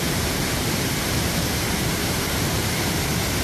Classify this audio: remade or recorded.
remade